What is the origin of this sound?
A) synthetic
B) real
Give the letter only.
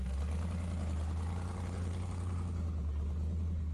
B